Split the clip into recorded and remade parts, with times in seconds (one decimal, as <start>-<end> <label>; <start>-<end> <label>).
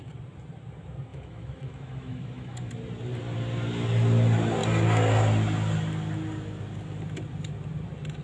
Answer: 0.0-1.1 recorded; 1.1-2.7 remade; 2.7-8.2 recorded